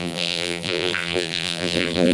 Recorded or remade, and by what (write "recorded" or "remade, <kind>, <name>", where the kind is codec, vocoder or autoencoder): remade, vocoder, BigVGAN v2